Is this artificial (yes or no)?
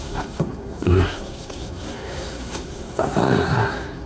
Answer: yes